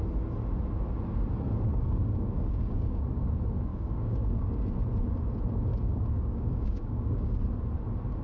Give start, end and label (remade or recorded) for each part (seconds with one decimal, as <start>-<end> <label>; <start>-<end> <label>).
0.0-1.7 recorded; 1.7-3.0 remade; 3.0-3.7 recorded; 3.7-4.6 remade; 4.6-5.7 recorded; 5.7-7.4 remade; 7.4-8.2 recorded